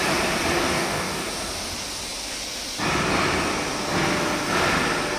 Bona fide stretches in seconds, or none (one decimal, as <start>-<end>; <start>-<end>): 0.0-0.6; 1.3-5.2